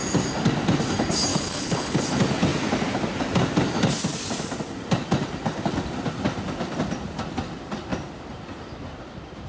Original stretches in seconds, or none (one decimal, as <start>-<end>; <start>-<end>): 0.0-1.3; 2.0-9.5